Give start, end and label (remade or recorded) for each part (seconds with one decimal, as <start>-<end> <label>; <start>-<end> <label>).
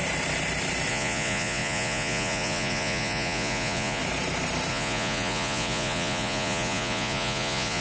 0.0-0.9 recorded; 0.9-4.0 remade; 4.0-4.7 recorded; 4.7-7.8 remade